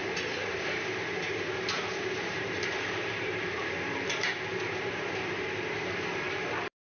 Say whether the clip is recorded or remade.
remade